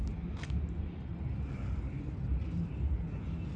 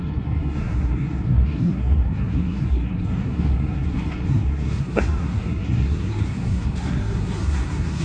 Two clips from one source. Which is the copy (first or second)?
second